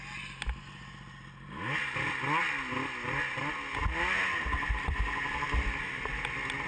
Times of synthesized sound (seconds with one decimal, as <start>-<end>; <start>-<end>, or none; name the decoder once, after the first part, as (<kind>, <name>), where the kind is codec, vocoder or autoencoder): none